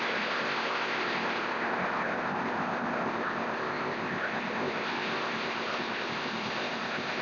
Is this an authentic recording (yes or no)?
no